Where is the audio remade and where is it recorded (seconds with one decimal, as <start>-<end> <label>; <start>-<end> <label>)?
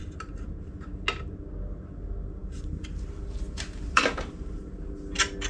0.0-2.4 recorded; 2.4-4.7 remade; 4.7-5.5 recorded